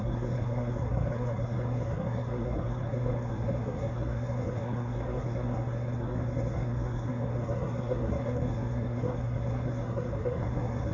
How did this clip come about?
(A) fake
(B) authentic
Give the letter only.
A